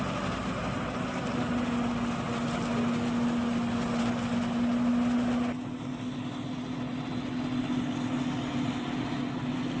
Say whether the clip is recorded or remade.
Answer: recorded